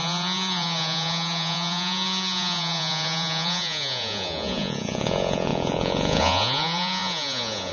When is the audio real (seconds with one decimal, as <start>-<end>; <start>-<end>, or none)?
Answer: none